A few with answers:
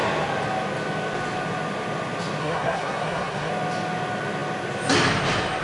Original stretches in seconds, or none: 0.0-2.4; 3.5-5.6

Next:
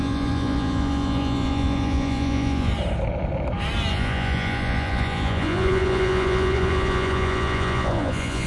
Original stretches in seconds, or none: 2.7-3.9

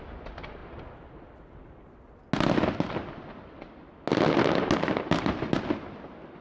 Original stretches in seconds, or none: 0.0-6.4

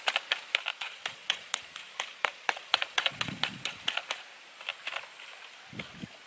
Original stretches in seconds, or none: 0.0-0.7; 1.6-2.1; 3.8-6.3